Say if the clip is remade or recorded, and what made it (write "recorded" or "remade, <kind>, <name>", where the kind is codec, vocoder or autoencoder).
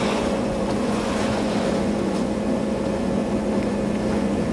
remade, vocoder, Vocos